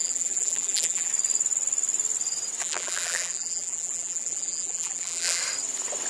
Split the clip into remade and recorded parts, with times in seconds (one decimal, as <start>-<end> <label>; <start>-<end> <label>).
0.0-1.1 remade; 1.1-2.6 recorded; 2.6-5.4 remade; 5.4-6.1 recorded